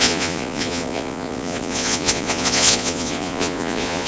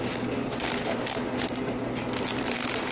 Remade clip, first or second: first